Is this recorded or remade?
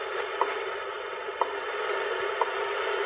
recorded